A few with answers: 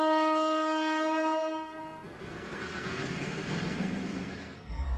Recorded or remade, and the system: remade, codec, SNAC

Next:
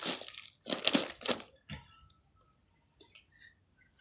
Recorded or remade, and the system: recorded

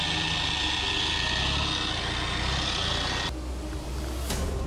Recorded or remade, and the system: recorded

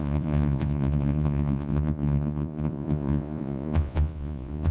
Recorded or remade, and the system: remade, vocoder, Vocos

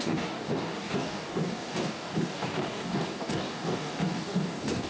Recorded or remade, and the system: remade, codec, DAC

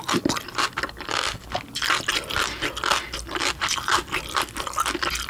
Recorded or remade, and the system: recorded